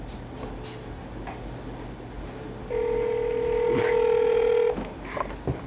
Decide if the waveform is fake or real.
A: fake